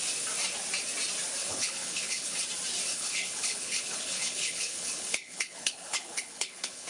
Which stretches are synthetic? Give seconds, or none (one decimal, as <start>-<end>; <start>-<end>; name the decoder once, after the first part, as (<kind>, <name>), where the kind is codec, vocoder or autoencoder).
1.4-2.4 (codec, HILCodec); 2.9-6.9